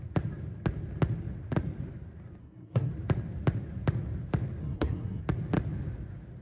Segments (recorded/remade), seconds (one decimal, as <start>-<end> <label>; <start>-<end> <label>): 0.0-2.4 recorded; 2.4-2.9 remade; 2.9-4.6 recorded; 4.6-5.2 remade; 5.2-6.4 recorded